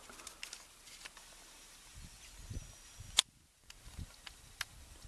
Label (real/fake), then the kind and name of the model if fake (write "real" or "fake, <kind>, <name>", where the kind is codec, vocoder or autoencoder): real